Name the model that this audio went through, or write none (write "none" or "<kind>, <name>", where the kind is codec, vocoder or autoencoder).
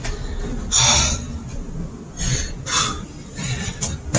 none